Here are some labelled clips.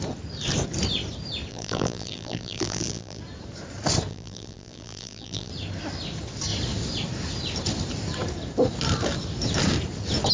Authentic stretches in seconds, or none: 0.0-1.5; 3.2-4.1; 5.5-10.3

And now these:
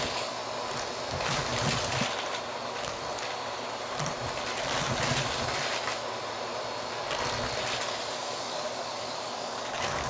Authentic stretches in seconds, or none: 0.4-1.1; 1.5-2.6; 3.0-8.1

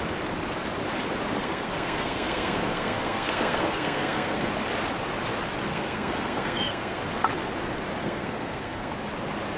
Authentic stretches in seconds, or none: 0.0-1.4; 4.5-5.7; 7.0-8.0; 8.9-9.6

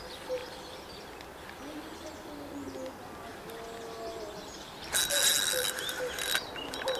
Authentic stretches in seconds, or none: 0.0-7.0

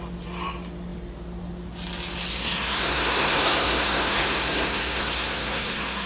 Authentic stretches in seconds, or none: 0.0-2.3

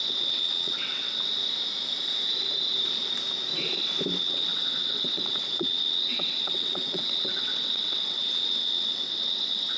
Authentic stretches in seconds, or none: 1.4-4.2